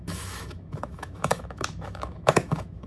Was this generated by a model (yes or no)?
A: yes